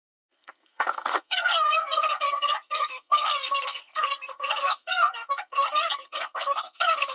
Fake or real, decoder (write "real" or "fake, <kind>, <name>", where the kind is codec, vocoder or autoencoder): fake, codec, SNAC